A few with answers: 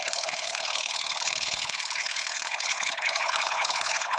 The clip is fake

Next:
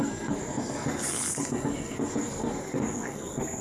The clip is fake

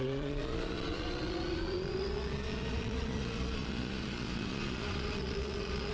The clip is fake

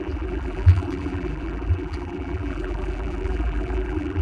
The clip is fake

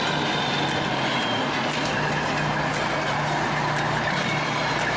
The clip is real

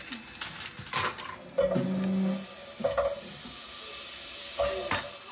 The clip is real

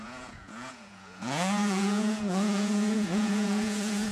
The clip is fake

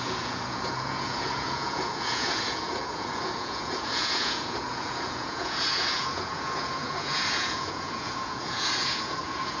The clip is fake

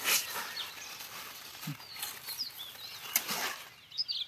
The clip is real